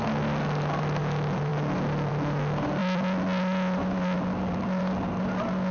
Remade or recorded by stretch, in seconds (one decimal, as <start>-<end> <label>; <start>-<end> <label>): 0.0-5.7 recorded